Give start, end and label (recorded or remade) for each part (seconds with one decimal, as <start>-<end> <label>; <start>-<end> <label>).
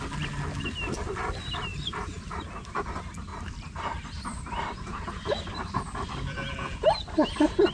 0.0-1.7 recorded; 1.7-2.4 remade; 2.4-3.3 recorded; 3.3-5.1 remade; 5.1-7.7 recorded